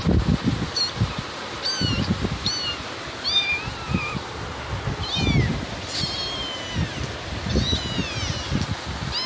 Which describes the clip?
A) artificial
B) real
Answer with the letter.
B